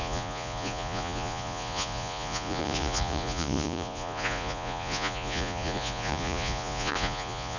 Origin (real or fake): fake